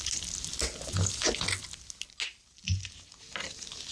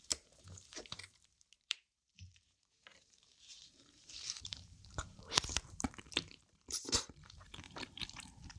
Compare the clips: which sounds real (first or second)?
first